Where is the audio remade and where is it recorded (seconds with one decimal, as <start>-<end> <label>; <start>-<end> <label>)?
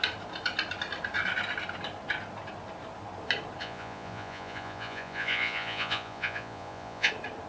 0.0-3.6 recorded; 3.6-7.1 remade; 7.1-7.5 recorded